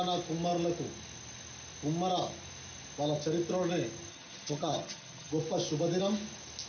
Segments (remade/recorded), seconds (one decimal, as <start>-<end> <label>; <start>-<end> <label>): 0.0-4.1 recorded; 4.1-5.3 remade; 5.3-6.7 recorded